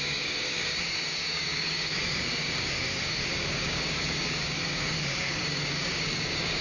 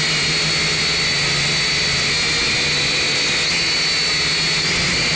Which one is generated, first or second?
first